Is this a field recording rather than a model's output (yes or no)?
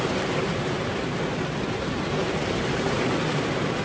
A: yes